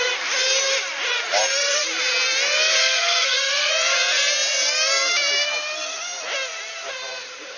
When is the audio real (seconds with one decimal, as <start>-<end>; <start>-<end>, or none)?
0.0-2.8; 3.7-7.6